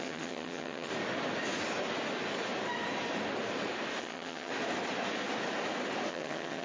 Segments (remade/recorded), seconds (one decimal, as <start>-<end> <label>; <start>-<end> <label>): 0.0-0.9 remade; 0.9-4.0 recorded; 4.0-4.5 remade; 4.5-6.1 recorded; 6.1-6.6 remade